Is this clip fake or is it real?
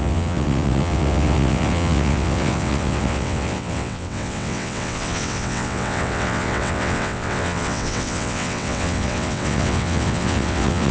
fake